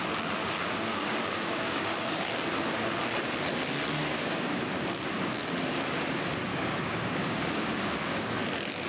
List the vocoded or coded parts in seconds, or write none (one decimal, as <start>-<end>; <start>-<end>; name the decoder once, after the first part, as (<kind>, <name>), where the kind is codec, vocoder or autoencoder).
0.4-2.3 (codec, DAC); 4.0-4.6; 6.5-8.4